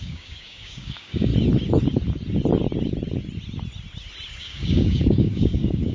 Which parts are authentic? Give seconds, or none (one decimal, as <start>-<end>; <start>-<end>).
1.3-4.4